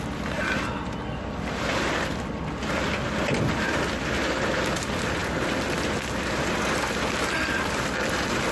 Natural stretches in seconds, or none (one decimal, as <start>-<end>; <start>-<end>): 0.0-8.5